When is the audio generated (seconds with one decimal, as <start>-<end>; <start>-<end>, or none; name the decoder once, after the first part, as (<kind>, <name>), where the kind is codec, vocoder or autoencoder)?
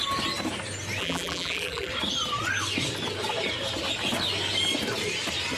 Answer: 1.0-1.9 (vocoder, BigVGAN v2)